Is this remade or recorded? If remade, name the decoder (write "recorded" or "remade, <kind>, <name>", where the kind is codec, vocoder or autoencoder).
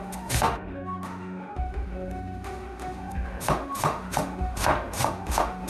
remade, autoencoder, DAC-VAE